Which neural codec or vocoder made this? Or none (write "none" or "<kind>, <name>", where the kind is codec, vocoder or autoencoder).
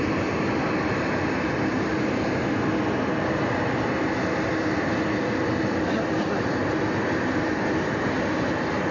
none